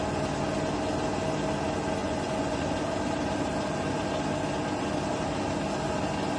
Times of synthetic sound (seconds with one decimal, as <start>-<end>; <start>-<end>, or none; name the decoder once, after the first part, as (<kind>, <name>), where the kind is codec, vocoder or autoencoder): 2.0-2.6 (vocoder, Vocos)